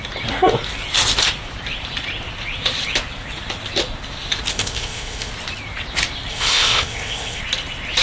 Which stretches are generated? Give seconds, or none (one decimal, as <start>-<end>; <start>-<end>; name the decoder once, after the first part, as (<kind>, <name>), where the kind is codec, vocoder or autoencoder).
4.5-5.3 (codec, ZipCodec); 6.3-7.4